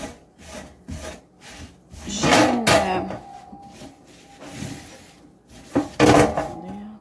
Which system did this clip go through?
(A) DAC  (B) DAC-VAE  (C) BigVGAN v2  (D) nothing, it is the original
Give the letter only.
D